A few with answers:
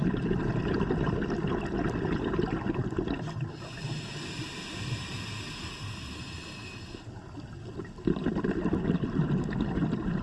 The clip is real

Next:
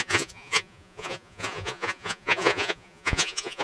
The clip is fake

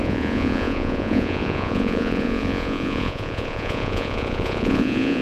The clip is fake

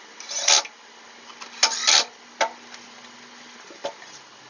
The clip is real